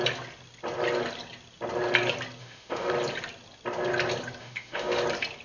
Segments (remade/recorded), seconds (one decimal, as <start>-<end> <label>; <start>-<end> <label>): 0.0-2.4 recorded; 2.4-2.9 remade; 2.9-4.4 recorded; 4.4-5.0 remade; 5.0-5.4 recorded